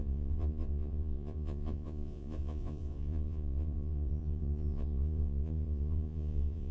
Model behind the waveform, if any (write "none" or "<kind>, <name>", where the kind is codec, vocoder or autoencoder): vocoder, Vocos